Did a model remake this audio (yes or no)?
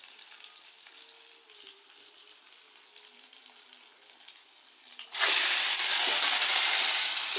yes